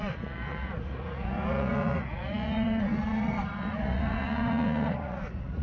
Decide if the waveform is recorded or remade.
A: remade